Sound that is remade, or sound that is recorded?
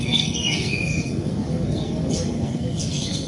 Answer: remade